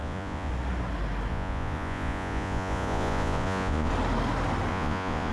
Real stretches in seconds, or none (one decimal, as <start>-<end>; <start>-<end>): 0.5-1.3; 3.9-4.7

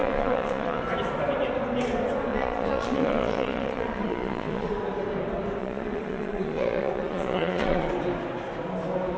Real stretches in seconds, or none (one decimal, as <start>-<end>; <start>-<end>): 0.8-2.3; 4.7-5.6; 7.9-9.2

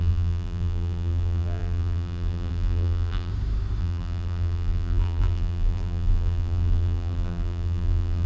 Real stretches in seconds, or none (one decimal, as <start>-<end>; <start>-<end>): 3.3-3.8